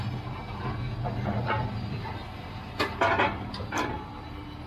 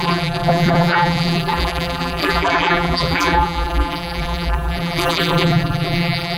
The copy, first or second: second